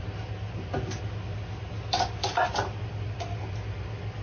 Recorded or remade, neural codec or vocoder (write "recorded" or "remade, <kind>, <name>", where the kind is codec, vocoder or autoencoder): recorded